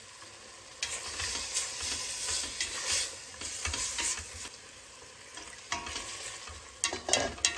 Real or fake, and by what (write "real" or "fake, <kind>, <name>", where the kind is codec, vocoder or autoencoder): real